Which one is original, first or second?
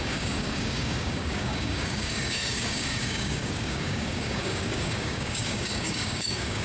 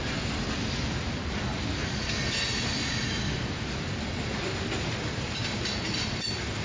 second